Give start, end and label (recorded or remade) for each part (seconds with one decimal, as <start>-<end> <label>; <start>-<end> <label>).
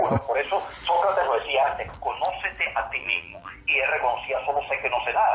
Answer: 0.0-3.0 recorded; 3.0-3.5 remade; 3.5-5.3 recorded